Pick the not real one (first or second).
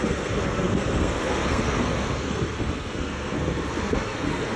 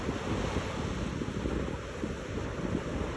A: first